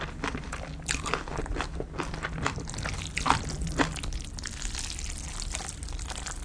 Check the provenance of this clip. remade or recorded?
recorded